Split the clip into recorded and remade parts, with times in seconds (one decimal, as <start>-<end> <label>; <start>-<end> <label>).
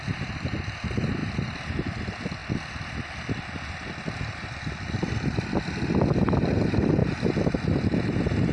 0.0-8.5 recorded